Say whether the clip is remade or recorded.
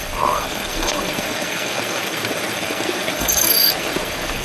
remade